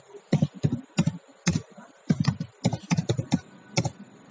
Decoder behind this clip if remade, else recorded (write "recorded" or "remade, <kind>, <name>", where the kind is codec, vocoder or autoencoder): recorded